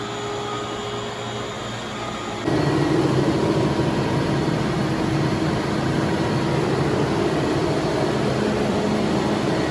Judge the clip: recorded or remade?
recorded